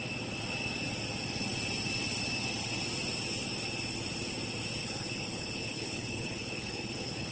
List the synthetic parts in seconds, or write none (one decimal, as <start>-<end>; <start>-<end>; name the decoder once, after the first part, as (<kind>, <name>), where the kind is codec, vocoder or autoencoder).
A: 4.8-7.3 (codec, HILCodec)